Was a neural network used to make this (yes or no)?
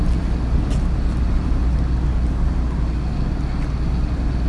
no